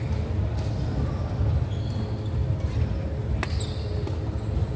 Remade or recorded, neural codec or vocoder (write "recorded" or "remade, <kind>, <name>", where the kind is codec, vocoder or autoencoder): recorded